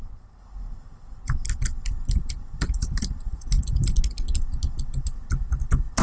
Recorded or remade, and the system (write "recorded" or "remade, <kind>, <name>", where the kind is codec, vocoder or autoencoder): recorded